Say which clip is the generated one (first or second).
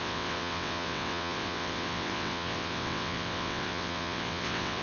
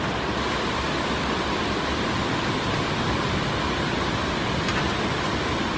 first